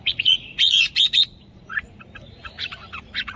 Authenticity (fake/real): fake